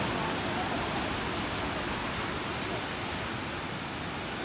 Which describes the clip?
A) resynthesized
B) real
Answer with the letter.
B